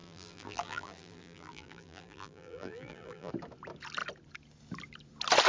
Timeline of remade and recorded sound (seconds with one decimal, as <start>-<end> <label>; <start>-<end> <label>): 0.0-3.3 remade; 3.3-5.5 recorded

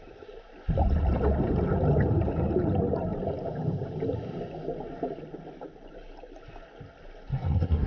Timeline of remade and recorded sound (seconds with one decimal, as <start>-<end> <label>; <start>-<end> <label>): 0.0-7.3 recorded; 7.3-7.9 remade

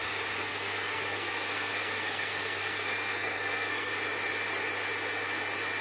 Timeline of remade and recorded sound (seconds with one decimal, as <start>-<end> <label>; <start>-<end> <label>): 0.0-0.4 recorded; 0.4-3.9 remade; 3.9-5.8 recorded

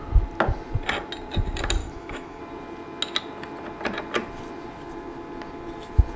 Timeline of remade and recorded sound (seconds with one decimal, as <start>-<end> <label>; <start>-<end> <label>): 0.0-1.8 recorded; 1.8-2.4 remade; 2.4-6.2 recorded

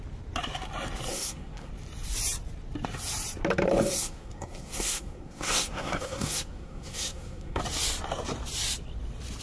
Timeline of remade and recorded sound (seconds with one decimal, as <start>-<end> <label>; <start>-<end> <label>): 0.0-1.1 recorded; 1.1-1.7 remade; 1.7-3.7 recorded; 3.7-7.6 remade; 7.6-9.4 recorded

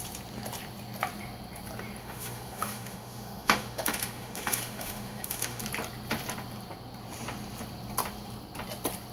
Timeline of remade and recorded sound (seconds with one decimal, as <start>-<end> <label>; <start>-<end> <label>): 0.0-2.0 recorded; 2.0-5.6 remade; 5.6-9.1 recorded